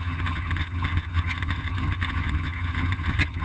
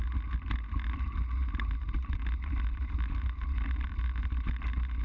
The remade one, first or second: first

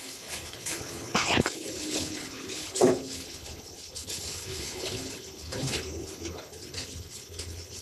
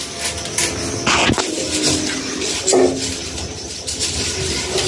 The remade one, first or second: first